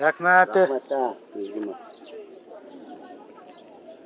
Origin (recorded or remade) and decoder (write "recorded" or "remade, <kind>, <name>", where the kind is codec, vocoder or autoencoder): recorded